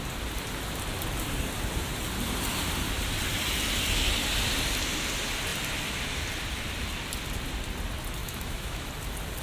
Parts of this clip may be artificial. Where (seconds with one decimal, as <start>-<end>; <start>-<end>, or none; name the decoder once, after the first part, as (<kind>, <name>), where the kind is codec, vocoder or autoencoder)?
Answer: 8.2-8.9 (autoencoder, DAC-VAE)